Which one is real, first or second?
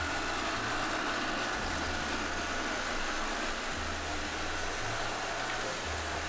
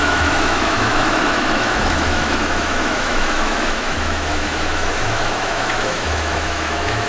first